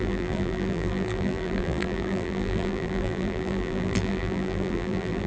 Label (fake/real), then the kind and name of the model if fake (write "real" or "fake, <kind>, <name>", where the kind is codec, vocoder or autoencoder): fake, vocoder, BigVGAN v2